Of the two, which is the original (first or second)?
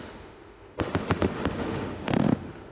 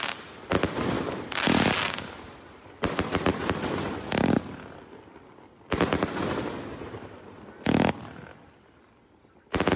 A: second